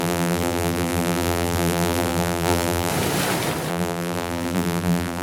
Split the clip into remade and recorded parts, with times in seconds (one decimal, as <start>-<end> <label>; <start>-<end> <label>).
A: 0.0-2.9 remade; 2.9-3.7 recorded; 3.7-5.2 remade